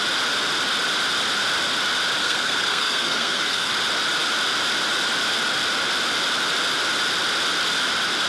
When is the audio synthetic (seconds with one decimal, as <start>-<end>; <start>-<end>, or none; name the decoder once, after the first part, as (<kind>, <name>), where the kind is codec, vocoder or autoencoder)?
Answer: 2.2-3.7 (codec, SNAC)